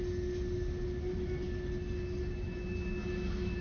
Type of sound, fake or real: real